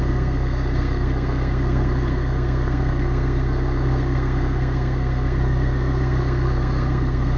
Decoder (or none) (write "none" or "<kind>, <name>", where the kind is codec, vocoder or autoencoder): codec, SNAC